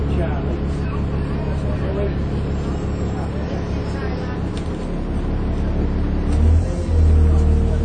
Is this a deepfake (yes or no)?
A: no